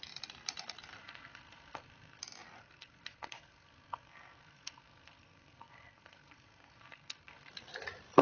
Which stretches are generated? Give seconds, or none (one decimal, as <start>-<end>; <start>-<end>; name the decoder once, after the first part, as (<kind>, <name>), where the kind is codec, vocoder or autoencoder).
1.0-2.2 (codec, SNAC); 2.6-7.5